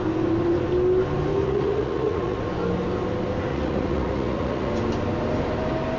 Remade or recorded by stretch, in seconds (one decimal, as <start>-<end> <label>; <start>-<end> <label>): 0.0-1.4 recorded; 1.4-2.4 remade; 2.4-3.5 recorded; 3.5-4.7 remade; 4.7-6.0 recorded